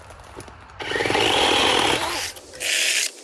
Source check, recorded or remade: recorded